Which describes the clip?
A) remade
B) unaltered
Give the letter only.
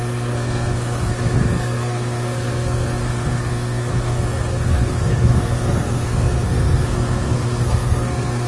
A